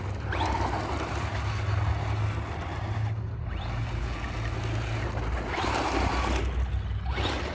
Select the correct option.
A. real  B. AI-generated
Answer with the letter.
A